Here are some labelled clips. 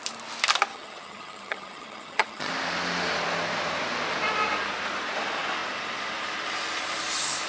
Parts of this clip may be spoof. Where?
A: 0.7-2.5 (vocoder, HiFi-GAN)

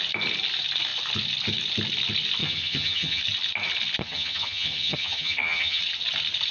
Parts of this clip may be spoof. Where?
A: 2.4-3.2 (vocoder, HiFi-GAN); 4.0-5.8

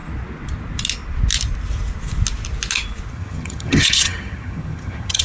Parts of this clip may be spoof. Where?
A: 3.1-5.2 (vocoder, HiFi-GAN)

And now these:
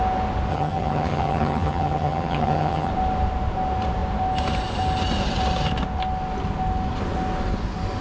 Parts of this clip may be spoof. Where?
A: 0.5-2.9 (vocoder, HiFi-GAN)